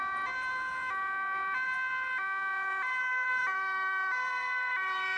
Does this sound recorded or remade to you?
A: remade